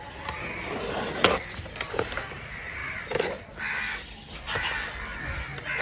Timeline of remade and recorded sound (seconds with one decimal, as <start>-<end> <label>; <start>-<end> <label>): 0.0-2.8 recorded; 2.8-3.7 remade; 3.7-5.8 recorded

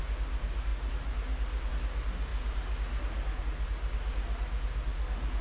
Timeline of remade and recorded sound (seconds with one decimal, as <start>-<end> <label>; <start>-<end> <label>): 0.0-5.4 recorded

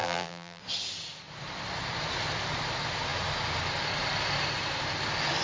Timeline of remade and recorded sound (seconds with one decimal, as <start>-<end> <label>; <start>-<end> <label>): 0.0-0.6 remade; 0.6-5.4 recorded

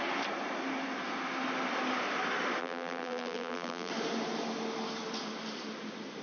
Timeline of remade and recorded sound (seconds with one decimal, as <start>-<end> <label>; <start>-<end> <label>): 0.0-2.6 recorded; 2.6-3.9 remade; 3.9-6.2 recorded

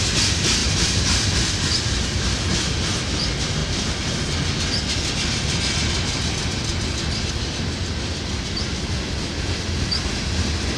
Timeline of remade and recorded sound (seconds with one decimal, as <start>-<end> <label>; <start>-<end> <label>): 0.0-0.6 recorded; 0.6-1.5 remade; 1.5-10.8 recorded

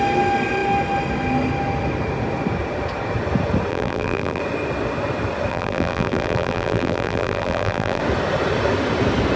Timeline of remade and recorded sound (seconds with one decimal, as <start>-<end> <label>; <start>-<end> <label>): 0.0-3.7 recorded; 3.7-4.4 remade; 4.4-5.5 recorded; 5.5-8.0 remade; 8.0-9.4 recorded

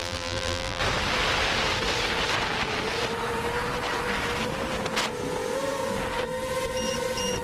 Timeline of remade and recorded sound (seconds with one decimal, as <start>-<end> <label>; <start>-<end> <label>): 0.0-0.8 remade; 0.8-7.4 recorded